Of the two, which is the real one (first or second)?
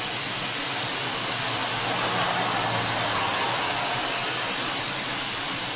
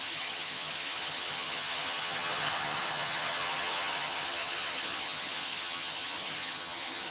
first